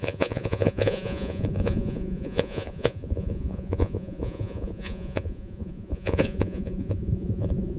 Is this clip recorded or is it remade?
remade